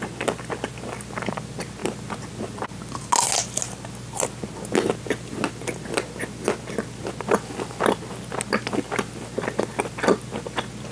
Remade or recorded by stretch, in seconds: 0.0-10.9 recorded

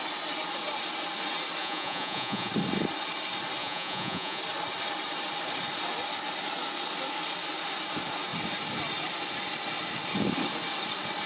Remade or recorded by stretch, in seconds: 0.0-1.6 recorded; 1.6-2.5 remade; 2.5-3.6 recorded; 3.6-4.4 remade; 4.4-11.3 recorded